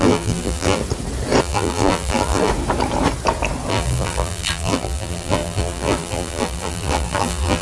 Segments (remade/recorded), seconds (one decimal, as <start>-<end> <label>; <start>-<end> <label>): 0.0-0.8 remade; 0.8-1.4 recorded; 1.4-2.5 remade; 2.5-3.7 recorded; 3.7-7.6 remade